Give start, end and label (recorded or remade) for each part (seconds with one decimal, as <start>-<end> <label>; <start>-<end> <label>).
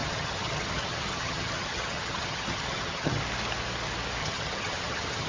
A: 0.0-3.2 remade; 3.2-4.2 recorded; 4.2-5.3 remade